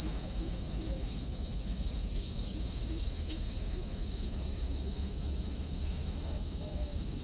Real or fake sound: fake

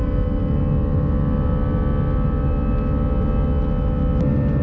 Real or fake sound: real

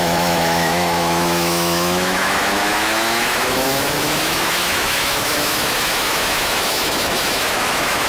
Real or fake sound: fake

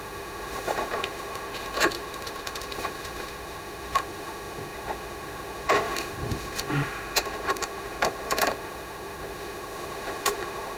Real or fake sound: fake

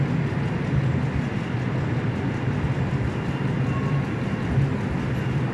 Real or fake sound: real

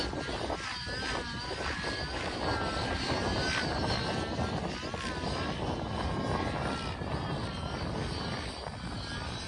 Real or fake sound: real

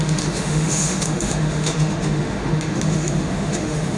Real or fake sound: fake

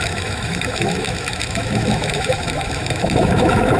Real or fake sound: fake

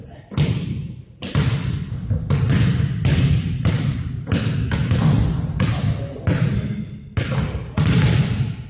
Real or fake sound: real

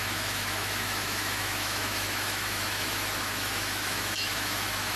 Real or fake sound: fake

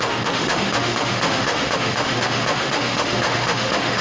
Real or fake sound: fake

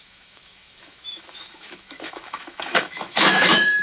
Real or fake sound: fake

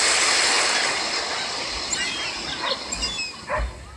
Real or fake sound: real